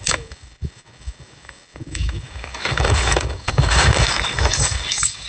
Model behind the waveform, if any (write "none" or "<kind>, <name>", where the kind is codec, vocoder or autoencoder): codec, DAC